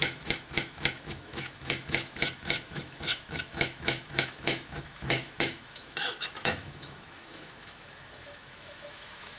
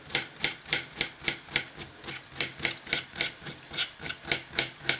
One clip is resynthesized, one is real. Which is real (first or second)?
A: second